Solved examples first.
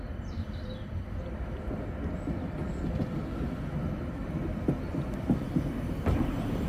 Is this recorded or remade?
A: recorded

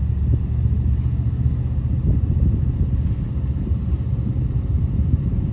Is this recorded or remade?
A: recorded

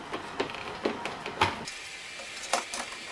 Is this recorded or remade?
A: recorded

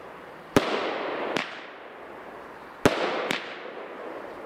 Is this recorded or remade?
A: recorded